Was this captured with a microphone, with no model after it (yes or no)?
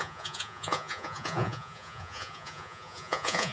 no